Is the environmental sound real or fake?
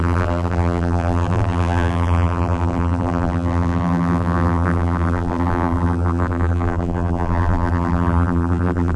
fake